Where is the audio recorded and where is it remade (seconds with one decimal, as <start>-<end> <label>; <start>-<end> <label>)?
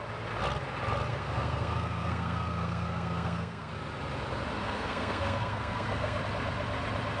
0.0-1.1 recorded; 1.1-3.7 remade; 3.7-4.6 recorded; 4.6-6.2 remade; 6.2-7.2 recorded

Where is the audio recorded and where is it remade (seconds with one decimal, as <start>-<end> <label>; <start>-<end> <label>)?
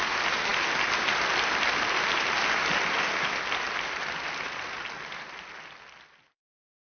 0.0-6.9 recorded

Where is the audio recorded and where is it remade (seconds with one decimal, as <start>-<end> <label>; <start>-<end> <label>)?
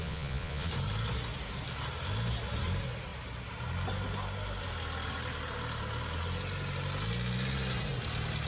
0.0-0.7 remade; 0.7-8.5 recorded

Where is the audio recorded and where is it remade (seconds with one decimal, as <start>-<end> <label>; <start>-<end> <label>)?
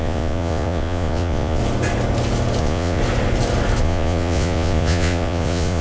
0.0-1.6 remade; 1.6-2.6 recorded; 2.6-3.0 remade; 3.0-3.8 recorded; 3.8-5.8 remade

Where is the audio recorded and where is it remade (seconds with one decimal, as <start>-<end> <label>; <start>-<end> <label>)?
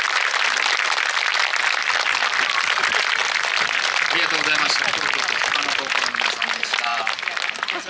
0.0-7.9 recorded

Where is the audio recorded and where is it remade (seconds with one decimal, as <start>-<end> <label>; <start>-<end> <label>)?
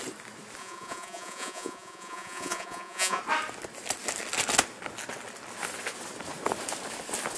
0.0-0.6 recorded; 0.6-3.2 remade; 3.2-7.4 recorded